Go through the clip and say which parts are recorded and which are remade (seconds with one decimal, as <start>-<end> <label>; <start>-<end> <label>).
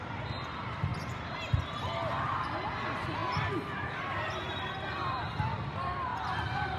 0.0-6.8 recorded